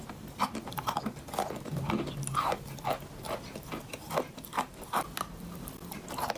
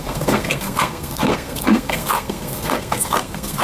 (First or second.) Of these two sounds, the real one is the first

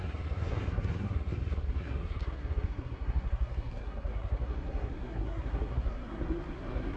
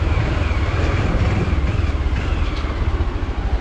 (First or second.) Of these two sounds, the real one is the second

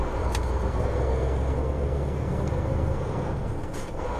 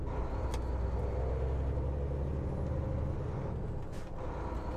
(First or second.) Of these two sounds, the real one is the second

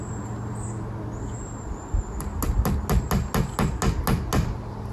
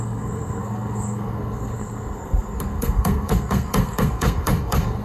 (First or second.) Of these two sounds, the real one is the first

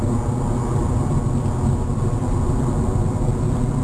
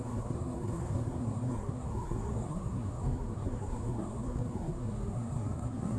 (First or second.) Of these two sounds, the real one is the first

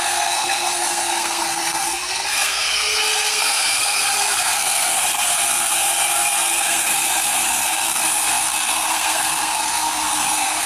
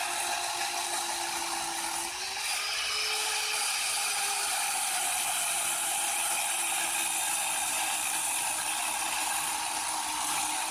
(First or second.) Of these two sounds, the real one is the second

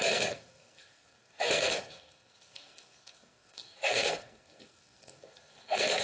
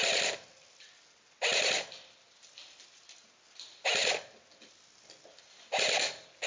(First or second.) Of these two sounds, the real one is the second